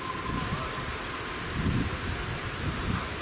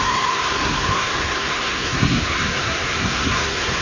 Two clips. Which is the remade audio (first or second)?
second